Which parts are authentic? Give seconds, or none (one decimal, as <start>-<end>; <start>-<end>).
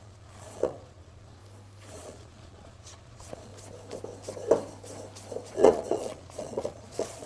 1.4-1.9; 3.5-5.5